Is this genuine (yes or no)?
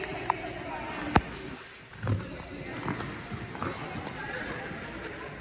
yes